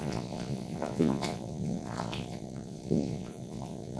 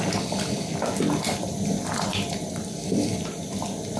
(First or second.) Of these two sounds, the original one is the second